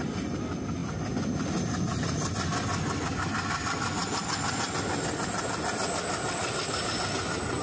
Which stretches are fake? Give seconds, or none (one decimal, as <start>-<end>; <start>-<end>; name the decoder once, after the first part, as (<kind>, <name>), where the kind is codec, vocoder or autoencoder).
none